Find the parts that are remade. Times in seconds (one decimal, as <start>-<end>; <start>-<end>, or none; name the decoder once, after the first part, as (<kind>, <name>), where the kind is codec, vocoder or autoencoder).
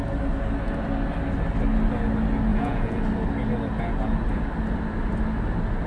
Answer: 2.5-3.0 (vocoder, Vocos)